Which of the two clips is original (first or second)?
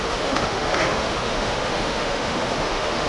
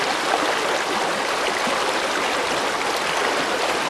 second